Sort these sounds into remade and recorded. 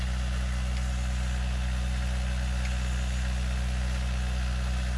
recorded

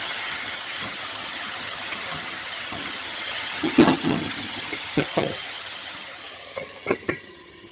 remade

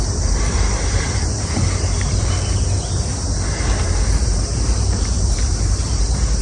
remade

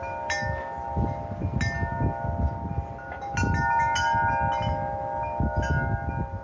recorded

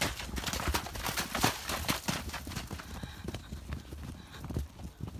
recorded